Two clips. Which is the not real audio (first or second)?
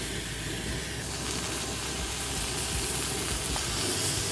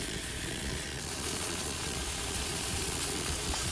second